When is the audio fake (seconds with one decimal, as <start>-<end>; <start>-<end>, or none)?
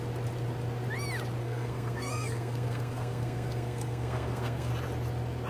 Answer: 1.4-4.7